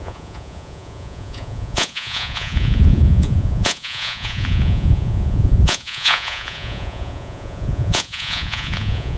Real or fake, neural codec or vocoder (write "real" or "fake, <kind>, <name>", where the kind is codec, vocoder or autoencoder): fake, vocoder, Vocos